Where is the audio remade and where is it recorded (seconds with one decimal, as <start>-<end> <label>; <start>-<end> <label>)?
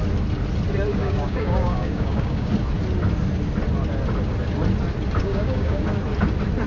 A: 0.0-0.9 recorded; 0.9-2.5 remade; 2.5-5.2 recorded; 5.2-5.8 remade; 5.8-6.7 recorded